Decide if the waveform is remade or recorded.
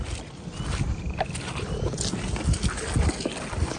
recorded